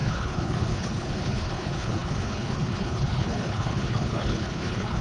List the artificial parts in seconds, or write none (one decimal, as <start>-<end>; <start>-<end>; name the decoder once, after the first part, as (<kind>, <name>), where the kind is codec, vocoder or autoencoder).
0.0-5.0 (codec, HILCodec)